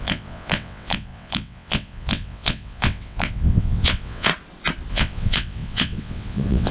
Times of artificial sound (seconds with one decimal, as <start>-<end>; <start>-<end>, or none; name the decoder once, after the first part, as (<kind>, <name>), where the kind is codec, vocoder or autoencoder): 0.0-4.3 (vocoder, WaveNeXt); 4.9-6.7